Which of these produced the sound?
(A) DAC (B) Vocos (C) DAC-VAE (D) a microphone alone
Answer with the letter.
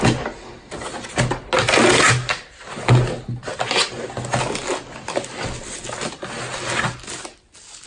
D